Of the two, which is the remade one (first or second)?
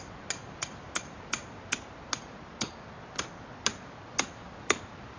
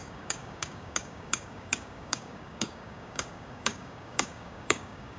second